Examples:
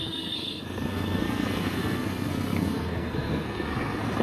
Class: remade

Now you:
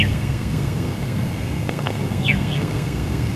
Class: remade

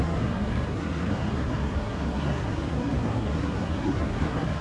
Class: remade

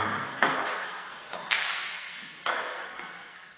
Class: remade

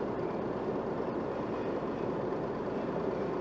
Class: recorded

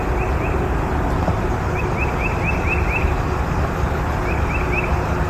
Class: recorded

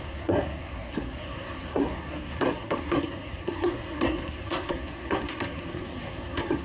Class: remade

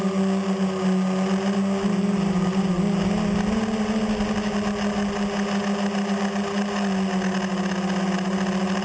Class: recorded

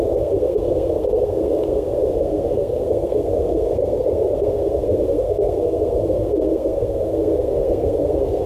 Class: remade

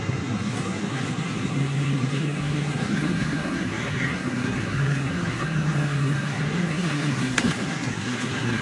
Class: remade